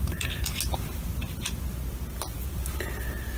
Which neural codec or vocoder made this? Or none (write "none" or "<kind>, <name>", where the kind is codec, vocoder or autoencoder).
none